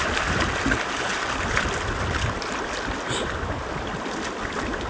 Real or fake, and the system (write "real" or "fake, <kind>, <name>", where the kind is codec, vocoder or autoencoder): real